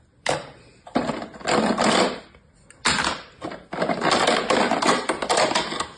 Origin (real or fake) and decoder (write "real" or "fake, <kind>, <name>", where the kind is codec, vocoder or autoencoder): real